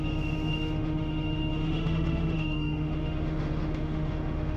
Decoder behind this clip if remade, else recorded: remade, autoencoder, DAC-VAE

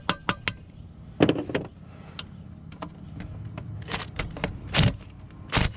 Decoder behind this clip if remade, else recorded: recorded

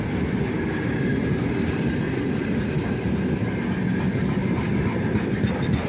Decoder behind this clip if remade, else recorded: recorded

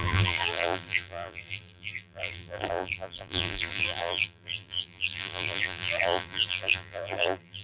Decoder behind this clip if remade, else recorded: remade, vocoder, BigVGAN v2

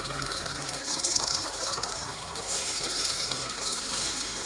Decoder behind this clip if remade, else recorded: remade, codec, SNAC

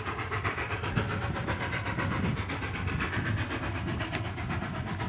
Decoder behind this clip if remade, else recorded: remade, vocoder, BigVGAN v2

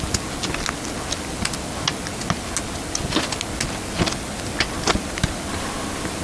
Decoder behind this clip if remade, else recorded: recorded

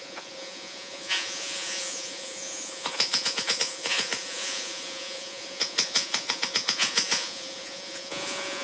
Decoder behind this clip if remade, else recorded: remade, vocoder, Vocos